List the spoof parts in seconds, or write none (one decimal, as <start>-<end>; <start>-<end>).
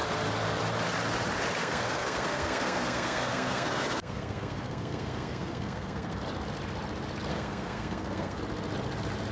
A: 1.6-6.2; 7.3-8.4